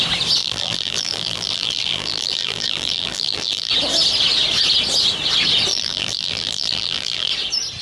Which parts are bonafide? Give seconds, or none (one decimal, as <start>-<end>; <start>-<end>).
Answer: 0.0-0.4; 3.7-5.7; 7.3-7.8